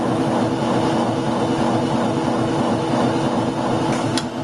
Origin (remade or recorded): recorded